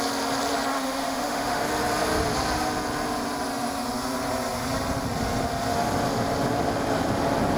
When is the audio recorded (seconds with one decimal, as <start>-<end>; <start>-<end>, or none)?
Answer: 0.0-0.7; 1.6-7.6